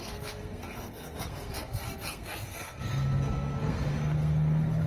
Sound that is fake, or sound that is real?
fake